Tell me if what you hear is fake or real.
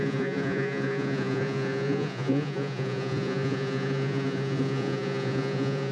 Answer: fake